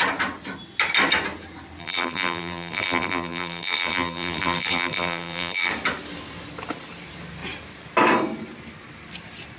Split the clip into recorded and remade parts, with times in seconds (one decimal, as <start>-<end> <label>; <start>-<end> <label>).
0.0-1.8 recorded; 1.8-5.7 remade; 5.7-9.6 recorded